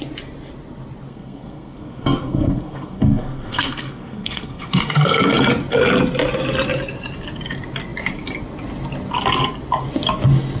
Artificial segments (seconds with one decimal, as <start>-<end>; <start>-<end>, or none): 1.1-5.2